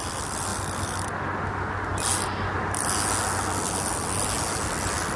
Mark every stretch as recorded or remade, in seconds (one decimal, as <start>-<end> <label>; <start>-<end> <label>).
0.0-5.2 recorded